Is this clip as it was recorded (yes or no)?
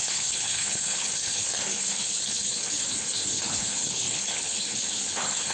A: no